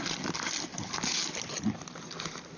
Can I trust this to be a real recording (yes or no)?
yes